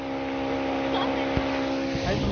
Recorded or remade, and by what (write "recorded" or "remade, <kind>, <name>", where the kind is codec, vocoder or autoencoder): recorded